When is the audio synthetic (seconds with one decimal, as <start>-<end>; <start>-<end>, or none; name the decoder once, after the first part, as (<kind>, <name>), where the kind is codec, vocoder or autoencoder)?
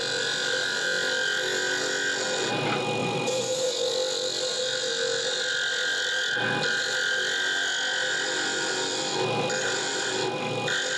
3.0-3.9 (vocoder, Vocos)